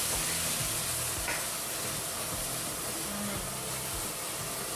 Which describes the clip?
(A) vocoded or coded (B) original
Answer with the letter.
B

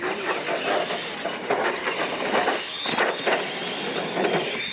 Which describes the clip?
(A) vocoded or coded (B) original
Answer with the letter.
B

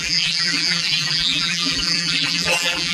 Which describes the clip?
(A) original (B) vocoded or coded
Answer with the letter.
B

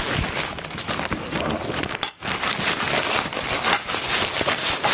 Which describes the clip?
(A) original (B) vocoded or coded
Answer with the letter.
A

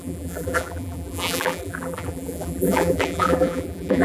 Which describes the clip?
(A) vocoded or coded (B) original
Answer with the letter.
A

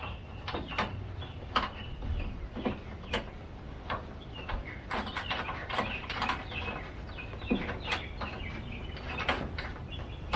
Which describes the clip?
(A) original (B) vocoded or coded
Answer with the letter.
B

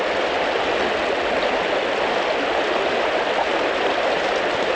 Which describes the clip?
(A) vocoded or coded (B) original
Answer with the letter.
B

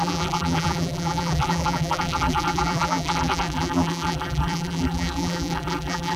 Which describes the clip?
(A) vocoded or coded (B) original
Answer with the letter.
A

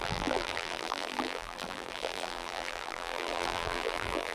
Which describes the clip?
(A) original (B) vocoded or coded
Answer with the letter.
B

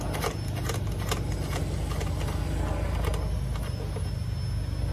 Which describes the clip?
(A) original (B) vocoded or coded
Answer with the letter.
A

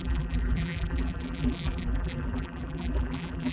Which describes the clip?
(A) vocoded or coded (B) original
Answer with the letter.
A